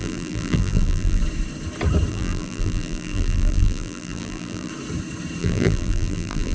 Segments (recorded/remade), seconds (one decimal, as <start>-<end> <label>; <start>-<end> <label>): 0.0-1.2 remade; 1.2-2.1 recorded; 2.1-4.7 remade; 4.7-5.4 recorded; 5.4-6.5 remade